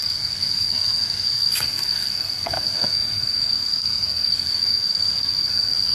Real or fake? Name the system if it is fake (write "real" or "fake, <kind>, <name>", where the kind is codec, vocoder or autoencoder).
fake, codec, SNAC